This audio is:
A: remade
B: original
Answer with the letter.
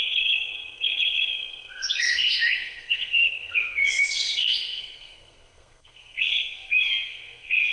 A